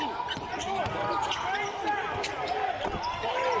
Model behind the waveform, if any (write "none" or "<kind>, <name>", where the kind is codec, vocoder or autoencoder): none